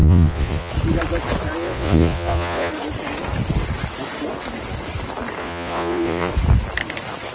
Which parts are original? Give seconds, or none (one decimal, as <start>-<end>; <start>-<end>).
0.7-1.6; 2.7-5.4; 6.3-7.3